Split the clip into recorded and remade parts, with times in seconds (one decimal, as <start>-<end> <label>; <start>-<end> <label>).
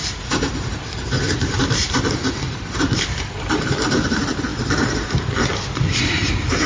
0.0-1.8 remade; 1.8-2.7 recorded; 2.7-4.5 remade; 4.5-6.0 recorded; 6.0-6.7 remade